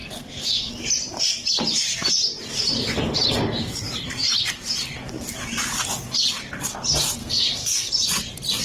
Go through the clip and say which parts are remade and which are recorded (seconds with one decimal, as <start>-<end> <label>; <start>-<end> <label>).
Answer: 0.0-0.7 remade; 0.7-7.2 recorded; 7.2-7.9 remade; 7.9-8.6 recorded